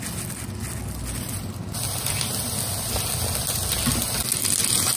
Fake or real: real